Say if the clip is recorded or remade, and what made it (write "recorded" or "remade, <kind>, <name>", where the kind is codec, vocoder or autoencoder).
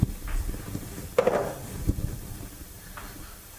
remade, vocoder, BigVGAN v2